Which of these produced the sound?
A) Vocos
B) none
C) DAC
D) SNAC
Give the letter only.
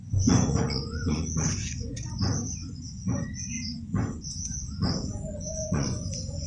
A